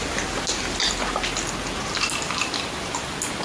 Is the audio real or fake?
real